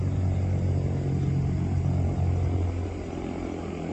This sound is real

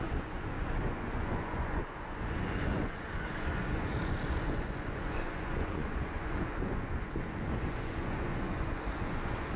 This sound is fake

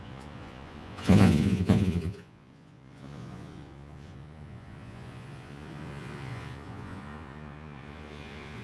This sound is fake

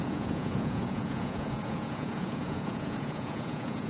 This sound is fake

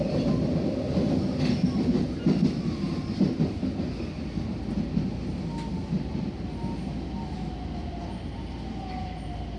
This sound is real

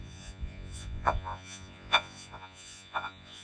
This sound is fake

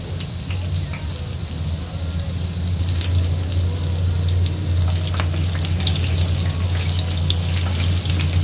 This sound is real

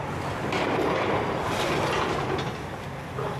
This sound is real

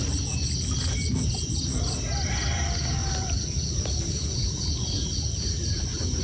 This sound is real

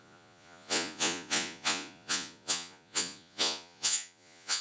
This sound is fake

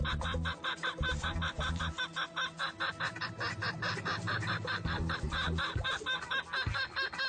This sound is real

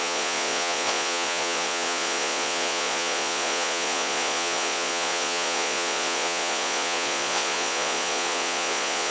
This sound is fake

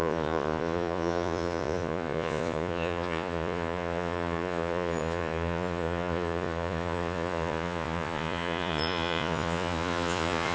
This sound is fake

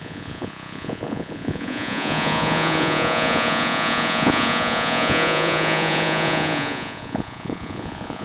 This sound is fake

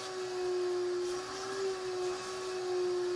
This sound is real